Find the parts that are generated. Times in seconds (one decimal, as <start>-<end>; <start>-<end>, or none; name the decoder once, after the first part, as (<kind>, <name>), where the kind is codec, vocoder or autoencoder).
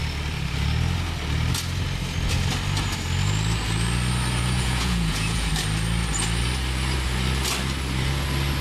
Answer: 4.4-5.5 (vocoder, Vocos)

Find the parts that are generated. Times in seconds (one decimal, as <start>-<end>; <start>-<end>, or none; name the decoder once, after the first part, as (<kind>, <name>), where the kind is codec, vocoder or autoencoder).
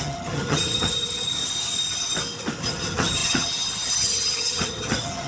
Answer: 0.0-1.4 (vocoder, HiFi-GAN); 2.6-5.3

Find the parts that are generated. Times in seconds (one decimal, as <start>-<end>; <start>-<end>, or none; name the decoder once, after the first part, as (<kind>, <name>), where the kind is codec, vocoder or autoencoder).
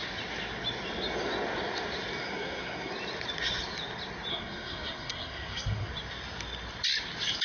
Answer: 2.2-2.9 (codec, SNAC); 4.3-5.9